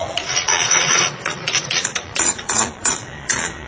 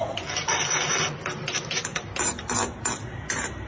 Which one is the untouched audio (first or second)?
second